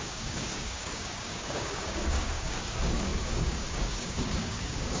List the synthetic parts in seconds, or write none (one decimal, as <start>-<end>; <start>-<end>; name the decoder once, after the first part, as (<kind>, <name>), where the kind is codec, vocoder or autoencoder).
0.0-5.0 (codec, DAC)